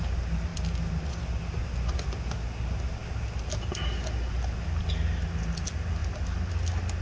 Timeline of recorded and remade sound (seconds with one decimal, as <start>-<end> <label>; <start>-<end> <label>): 0.0-7.0 recorded